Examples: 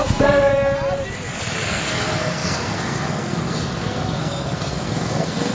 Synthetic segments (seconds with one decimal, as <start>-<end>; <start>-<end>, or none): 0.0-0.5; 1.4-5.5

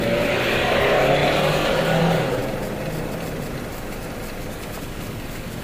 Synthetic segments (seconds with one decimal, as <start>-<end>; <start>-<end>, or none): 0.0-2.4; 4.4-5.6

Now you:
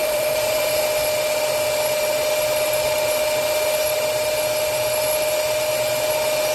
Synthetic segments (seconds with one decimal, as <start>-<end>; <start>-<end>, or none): 0.0-0.8

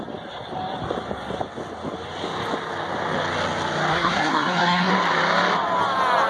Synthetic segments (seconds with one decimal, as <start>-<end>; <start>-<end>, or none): 3.9-4.9